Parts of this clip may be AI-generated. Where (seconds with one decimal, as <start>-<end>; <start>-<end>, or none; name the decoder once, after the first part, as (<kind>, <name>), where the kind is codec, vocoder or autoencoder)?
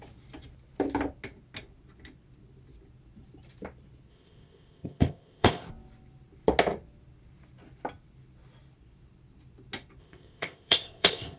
4.1-5.7 (codec, ZipCodec); 10.0-11.4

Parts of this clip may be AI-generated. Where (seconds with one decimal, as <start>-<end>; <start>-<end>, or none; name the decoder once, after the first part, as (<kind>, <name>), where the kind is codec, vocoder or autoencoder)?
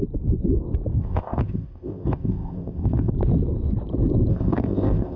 1.0-3.1 (codec, ZipCodec); 4.3-5.2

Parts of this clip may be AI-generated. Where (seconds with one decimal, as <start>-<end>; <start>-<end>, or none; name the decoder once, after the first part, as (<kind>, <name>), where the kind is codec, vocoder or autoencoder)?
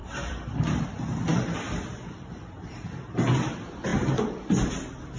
0.0-0.8 (vocoder, BigVGAN v2); 1.3-2.8; 3.9-4.7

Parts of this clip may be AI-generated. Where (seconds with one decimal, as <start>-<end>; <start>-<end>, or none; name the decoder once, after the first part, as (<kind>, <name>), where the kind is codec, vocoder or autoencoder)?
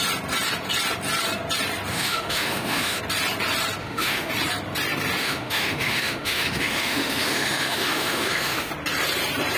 1.9-3.0 (autoencoder, DAC-VAE); 3.8-4.3; 5.2-8.7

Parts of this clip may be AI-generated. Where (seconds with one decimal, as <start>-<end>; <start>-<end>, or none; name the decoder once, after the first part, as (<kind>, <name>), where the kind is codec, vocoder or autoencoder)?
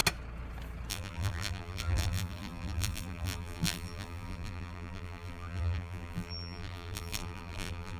0.9-8.0 (vocoder, BigVGAN v2)